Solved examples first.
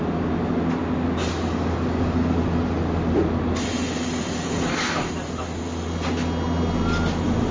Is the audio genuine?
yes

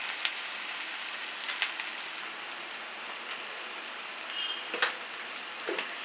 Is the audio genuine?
yes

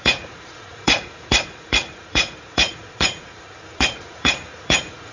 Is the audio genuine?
no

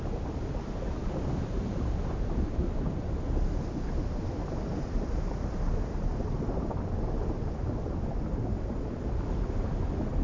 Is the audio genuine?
yes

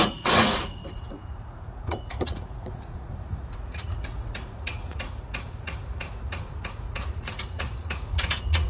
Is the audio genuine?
no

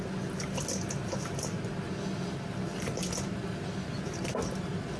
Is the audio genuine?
yes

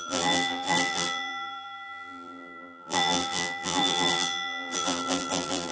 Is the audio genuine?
no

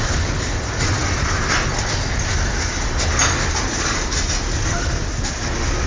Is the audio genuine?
yes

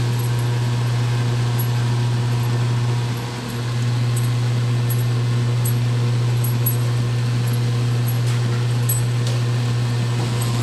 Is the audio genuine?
yes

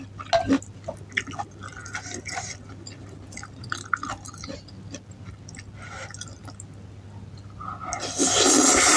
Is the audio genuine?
yes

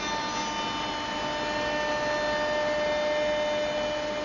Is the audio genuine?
yes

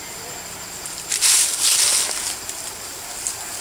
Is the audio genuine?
yes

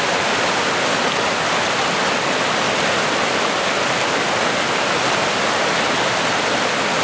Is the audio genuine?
yes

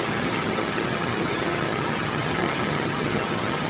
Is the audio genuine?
no